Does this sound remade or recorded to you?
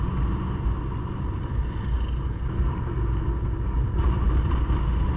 recorded